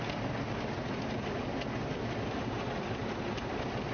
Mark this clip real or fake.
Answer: real